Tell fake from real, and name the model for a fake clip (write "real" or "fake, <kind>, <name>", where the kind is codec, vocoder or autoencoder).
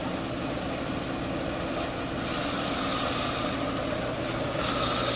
real